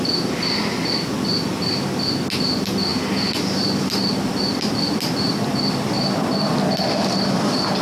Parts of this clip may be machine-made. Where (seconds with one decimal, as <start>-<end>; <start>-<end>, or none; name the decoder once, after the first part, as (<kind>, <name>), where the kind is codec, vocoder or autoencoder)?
2.9-7.8 (vocoder, BigVGAN v2)